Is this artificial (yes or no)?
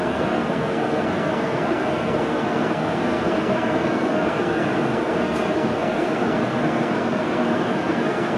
yes